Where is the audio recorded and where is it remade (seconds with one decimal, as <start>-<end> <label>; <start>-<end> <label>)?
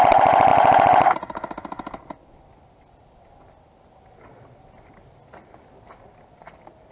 0.0-6.9 recorded